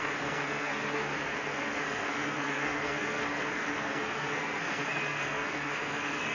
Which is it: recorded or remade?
remade